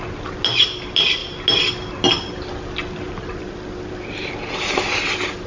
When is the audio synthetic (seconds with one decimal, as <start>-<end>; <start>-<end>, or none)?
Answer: none